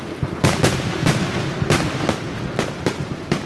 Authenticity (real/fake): real